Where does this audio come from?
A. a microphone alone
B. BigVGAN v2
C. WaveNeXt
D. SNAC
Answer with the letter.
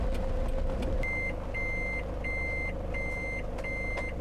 A